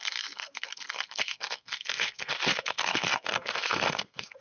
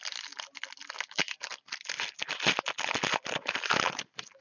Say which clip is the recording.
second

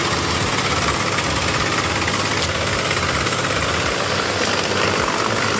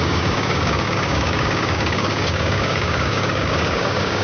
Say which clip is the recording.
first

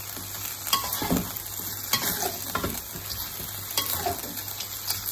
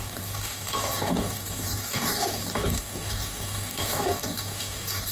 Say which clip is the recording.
first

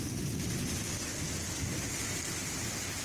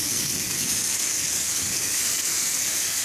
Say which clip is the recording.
first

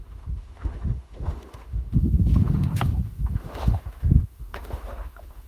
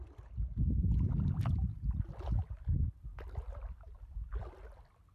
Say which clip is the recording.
second